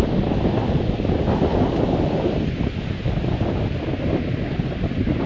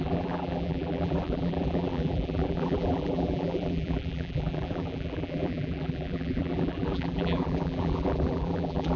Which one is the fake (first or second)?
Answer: second